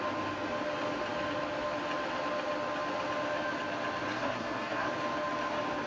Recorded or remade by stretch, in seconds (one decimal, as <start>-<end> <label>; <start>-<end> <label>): 0.0-4.1 recorded; 4.1-4.9 remade; 4.9-5.9 recorded